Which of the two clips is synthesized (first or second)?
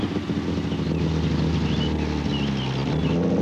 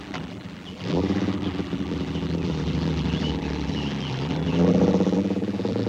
second